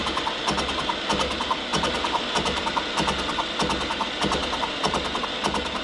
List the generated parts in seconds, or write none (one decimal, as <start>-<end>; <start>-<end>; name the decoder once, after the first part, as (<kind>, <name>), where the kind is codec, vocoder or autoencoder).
1.7-5.2 (vocoder, BigVGAN v2)